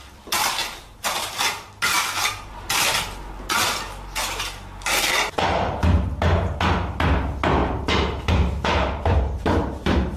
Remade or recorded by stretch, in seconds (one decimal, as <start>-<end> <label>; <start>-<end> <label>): 0.0-7.6 recorded; 7.6-10.2 remade